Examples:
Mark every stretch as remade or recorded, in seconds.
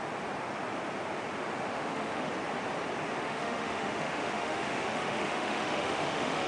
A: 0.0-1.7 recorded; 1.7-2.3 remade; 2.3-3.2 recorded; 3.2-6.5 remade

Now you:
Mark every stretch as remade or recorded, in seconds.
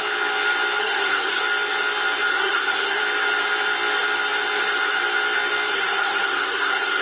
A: 0.0-0.8 recorded; 0.8-1.4 remade; 1.4-2.3 recorded; 2.3-3.0 remade; 3.0-5.7 recorded; 5.7-7.0 remade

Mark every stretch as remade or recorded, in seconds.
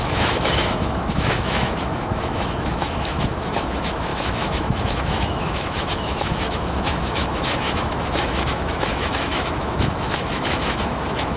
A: 0.0-11.4 remade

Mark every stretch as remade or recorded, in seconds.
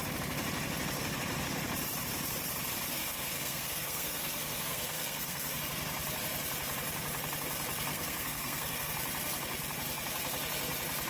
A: 0.0-2.9 recorded; 2.9-5.6 remade; 5.6-7.9 recorded; 7.9-8.9 remade; 8.9-11.1 recorded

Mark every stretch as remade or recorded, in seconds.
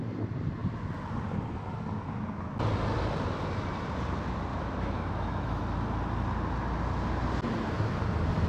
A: 0.0-4.5 recorded; 4.5-5.6 remade; 5.6-8.5 recorded